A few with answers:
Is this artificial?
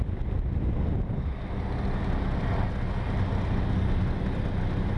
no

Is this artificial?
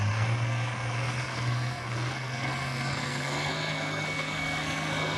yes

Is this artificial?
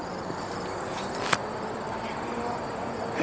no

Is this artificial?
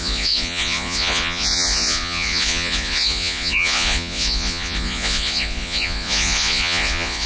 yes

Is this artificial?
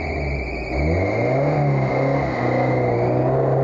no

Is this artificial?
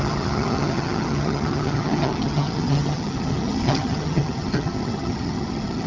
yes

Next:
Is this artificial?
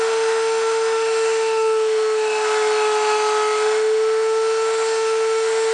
yes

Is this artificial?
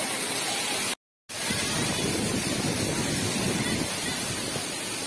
no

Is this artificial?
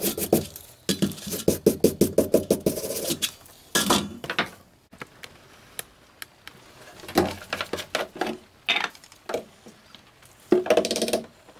no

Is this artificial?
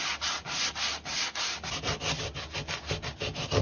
no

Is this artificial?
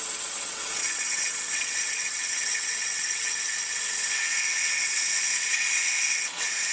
yes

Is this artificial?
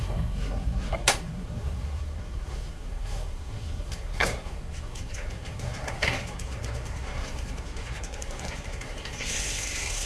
yes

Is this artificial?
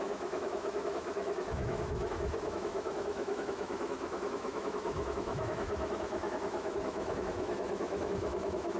yes